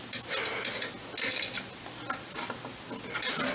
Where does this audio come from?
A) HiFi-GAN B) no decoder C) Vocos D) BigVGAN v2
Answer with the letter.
B